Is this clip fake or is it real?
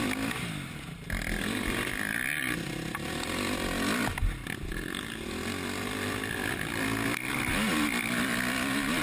real